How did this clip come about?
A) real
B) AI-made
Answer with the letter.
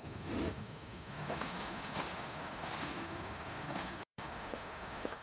B